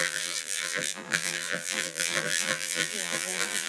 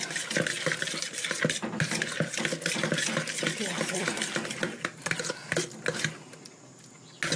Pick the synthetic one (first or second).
first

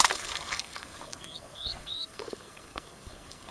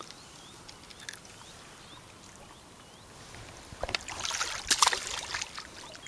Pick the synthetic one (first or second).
first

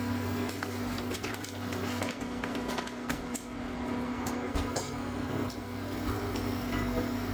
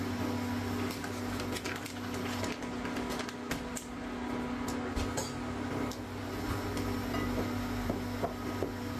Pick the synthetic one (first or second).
first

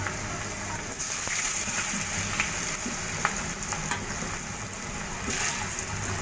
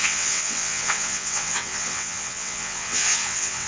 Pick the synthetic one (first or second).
second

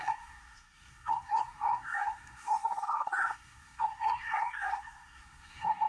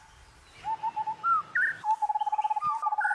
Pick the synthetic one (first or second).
first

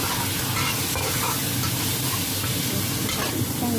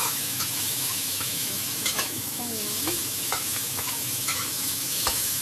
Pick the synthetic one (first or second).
second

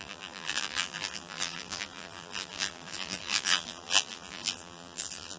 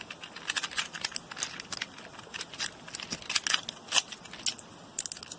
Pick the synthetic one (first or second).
first